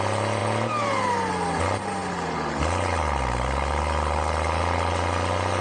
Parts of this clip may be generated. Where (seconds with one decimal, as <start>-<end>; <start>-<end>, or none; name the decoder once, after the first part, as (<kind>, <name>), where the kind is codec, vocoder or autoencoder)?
none